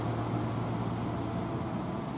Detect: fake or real real